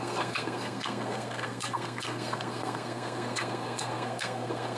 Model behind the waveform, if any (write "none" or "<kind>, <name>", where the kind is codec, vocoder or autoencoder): codec, SNAC